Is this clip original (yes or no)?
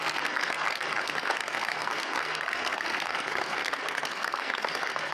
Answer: no